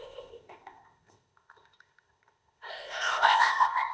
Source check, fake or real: fake